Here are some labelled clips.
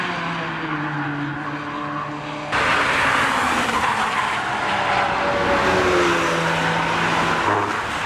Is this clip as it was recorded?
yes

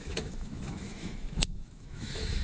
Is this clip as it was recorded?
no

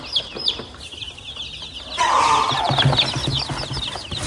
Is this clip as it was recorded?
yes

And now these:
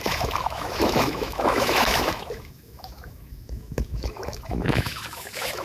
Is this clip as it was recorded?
no